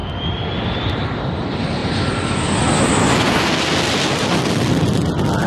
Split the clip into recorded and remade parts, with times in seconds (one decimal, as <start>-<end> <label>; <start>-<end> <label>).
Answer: 0.0-1.4 remade; 1.4-5.5 recorded